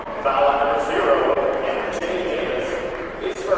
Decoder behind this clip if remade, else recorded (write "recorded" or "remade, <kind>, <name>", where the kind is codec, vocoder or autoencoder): remade, autoencoder, DAC-VAE